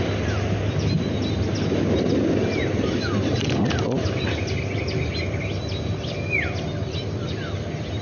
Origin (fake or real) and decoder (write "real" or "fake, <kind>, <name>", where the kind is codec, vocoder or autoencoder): real